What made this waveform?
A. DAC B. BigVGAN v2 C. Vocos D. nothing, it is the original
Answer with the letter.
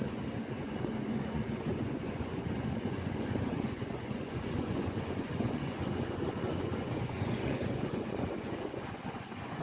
C